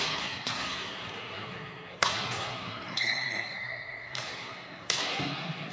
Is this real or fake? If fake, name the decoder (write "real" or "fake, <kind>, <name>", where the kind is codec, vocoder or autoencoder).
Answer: fake, codec, SNAC